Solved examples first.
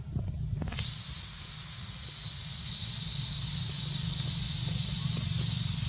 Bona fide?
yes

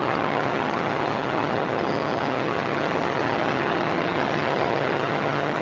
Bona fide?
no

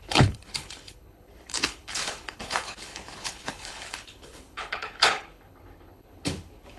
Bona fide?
no